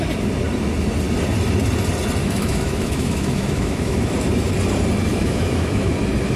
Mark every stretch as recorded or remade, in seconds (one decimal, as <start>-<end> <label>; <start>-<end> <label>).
0.0-2.2 recorded; 2.2-4.1 remade; 4.1-5.1 recorded; 5.1-5.9 remade; 5.9-6.4 recorded